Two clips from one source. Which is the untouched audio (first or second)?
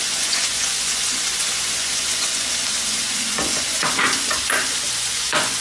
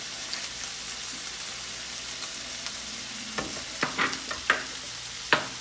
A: second